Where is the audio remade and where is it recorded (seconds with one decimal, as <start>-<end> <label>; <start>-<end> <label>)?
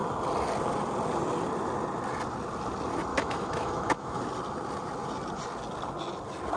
0.0-3.1 recorded; 3.1-4.2 remade; 4.2-6.6 recorded